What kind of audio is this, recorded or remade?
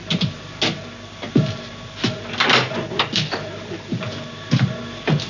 recorded